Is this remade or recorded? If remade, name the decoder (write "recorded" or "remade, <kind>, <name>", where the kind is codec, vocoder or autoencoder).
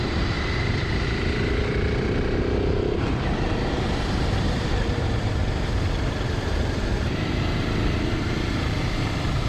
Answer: remade, vocoder, BigVGAN v2